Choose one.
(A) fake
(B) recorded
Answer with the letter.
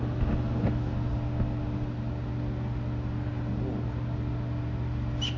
B